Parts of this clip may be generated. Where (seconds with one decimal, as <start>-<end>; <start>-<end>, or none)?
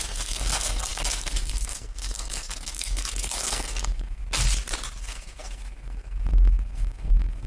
0.0-4.2; 5.0-7.5